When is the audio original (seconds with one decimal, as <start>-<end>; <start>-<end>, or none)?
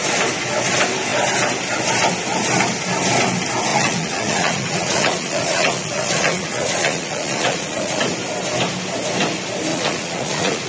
0.0-3.7; 8.0-9.7